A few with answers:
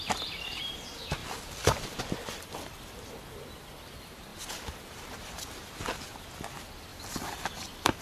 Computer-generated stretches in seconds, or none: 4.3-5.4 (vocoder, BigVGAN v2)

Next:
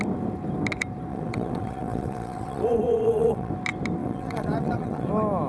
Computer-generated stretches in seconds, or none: 1.1-3.5 (vocoder, WaveNeXt); 4.0-5.1

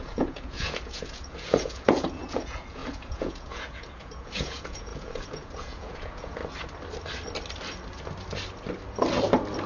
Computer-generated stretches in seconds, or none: 0.0-6.4 (vocoder, Vocos)

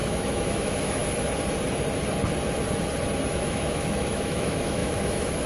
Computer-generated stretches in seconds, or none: 0.0-1.0 (autoencoder, DAC-VAE); 3.3-5.5